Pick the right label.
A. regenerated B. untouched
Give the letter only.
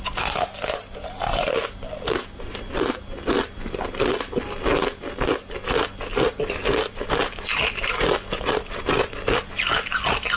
B